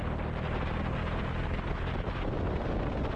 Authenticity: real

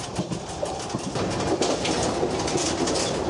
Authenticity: real